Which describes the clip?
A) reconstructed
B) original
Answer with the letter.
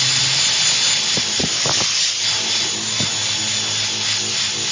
B